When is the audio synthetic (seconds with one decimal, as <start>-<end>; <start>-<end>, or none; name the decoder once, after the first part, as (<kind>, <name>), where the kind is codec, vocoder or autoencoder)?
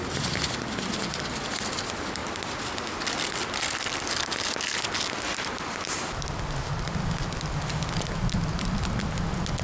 none